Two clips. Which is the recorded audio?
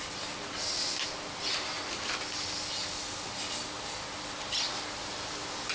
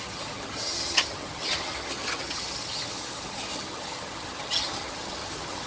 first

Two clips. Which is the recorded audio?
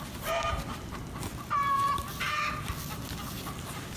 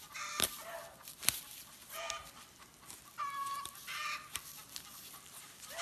first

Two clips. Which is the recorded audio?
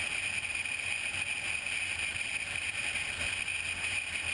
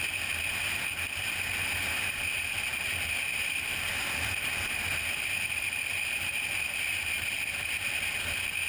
first